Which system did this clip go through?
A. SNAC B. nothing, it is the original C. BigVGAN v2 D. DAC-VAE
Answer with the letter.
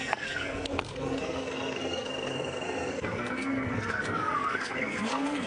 A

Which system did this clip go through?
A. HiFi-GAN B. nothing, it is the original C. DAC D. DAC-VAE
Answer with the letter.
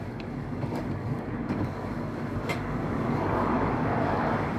C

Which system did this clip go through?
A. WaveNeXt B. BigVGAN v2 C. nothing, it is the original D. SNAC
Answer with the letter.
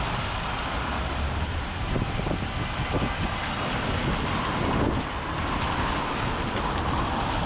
C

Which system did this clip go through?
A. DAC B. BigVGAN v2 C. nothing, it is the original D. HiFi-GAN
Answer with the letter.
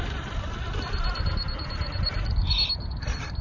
C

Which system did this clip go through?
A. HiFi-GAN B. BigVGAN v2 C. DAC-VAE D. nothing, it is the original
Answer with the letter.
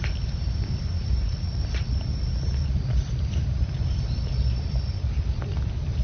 B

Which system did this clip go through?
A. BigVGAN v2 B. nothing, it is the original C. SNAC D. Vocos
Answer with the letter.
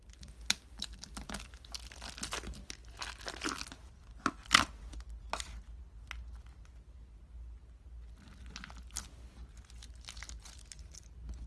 B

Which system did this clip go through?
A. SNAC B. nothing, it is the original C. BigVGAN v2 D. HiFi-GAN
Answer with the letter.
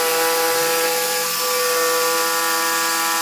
B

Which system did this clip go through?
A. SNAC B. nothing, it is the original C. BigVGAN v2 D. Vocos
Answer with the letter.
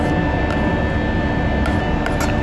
B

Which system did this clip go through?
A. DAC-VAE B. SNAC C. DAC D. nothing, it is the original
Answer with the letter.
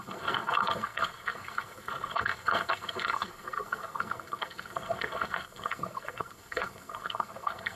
B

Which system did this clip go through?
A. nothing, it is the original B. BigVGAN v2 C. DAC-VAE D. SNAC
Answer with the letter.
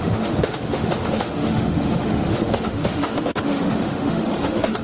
C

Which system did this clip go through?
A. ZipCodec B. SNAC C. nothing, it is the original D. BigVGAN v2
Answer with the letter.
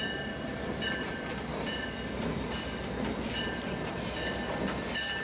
D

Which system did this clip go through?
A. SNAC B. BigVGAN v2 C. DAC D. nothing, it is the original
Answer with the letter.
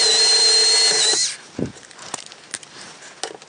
D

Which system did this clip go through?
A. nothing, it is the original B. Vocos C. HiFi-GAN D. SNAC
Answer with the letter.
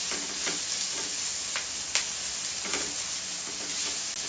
A